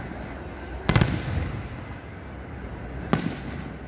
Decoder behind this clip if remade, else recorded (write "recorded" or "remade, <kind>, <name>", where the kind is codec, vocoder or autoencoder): recorded